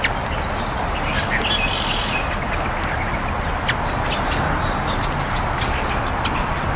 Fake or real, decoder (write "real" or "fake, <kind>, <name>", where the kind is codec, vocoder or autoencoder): real